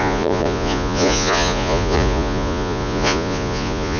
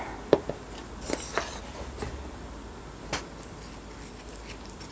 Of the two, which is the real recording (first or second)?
second